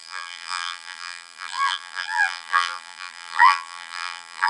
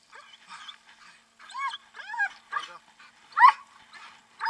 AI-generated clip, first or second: first